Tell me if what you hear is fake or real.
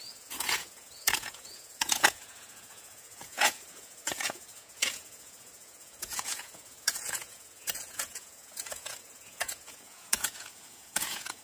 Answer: fake